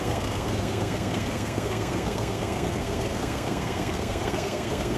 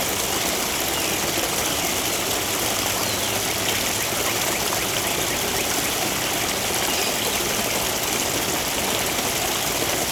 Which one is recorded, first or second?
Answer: second